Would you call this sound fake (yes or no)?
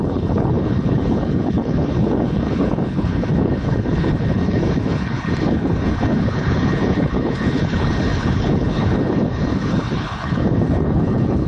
yes